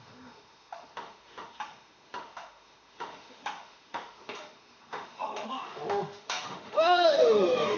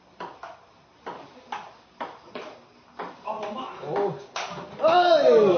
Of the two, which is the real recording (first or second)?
second